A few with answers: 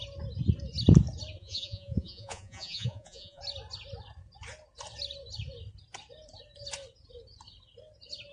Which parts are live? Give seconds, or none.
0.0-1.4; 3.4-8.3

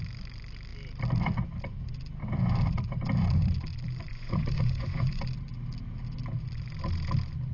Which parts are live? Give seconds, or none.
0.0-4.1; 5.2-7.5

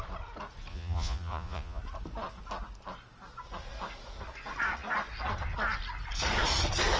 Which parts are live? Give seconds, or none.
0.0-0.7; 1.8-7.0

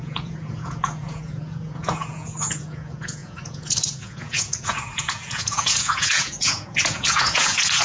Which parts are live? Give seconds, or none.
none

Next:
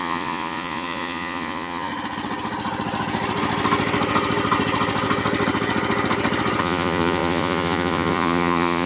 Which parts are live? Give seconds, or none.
1.9-6.6